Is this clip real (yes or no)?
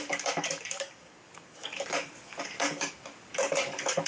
no